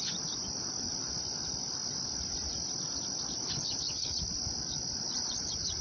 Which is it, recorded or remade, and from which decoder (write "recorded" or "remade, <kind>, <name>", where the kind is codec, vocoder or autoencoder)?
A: recorded